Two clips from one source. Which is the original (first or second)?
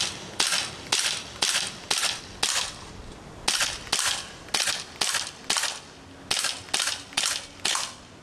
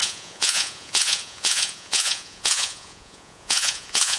first